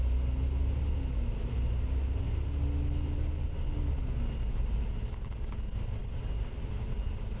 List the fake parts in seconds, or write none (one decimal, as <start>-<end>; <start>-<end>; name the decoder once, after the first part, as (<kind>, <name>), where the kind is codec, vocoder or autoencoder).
none